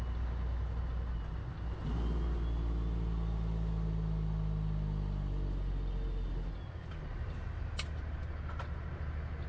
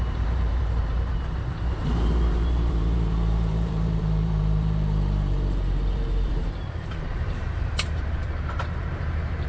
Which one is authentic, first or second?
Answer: first